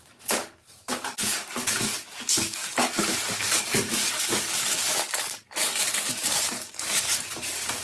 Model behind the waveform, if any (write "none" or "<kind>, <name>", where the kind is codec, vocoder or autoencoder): codec, DAC